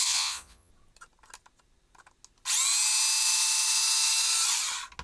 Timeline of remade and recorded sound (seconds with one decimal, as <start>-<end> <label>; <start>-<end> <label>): 0.0-0.7 remade; 0.7-5.0 recorded